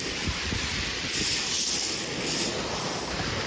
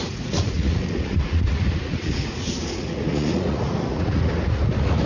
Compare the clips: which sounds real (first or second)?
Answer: first